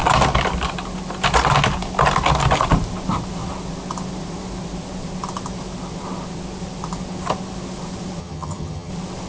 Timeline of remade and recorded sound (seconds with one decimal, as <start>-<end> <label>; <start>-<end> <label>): 0.0-8.2 recorded; 8.2-8.9 remade; 8.9-9.3 recorded